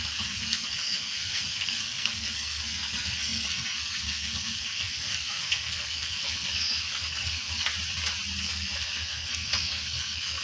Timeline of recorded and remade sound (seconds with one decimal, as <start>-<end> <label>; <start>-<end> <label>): 0.0-7.7 remade; 7.7-8.4 recorded; 8.4-10.4 remade